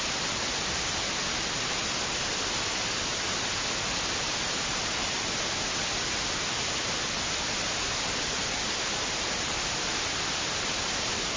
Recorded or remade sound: recorded